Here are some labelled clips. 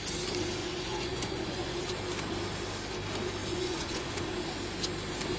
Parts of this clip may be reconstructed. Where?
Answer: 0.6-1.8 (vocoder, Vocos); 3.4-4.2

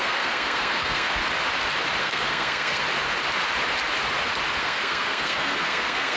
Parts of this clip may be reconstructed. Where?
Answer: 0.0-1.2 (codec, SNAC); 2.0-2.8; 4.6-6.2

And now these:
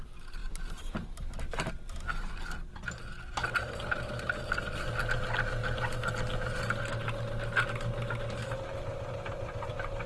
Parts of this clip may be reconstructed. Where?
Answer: none